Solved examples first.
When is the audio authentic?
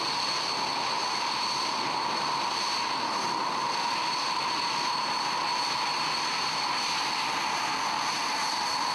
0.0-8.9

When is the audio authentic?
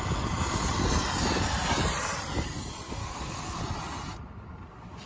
0.0-3.0; 3.6-5.1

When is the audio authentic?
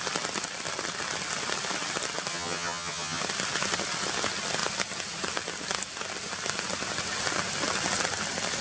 0.0-2.3; 3.2-8.6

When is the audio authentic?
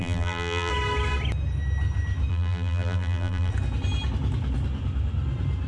0.7-2.3; 3.5-5.7